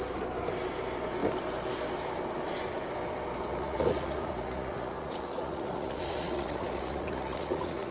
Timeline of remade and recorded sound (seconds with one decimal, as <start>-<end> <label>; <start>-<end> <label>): 0.0-3.5 recorded; 3.5-7.9 remade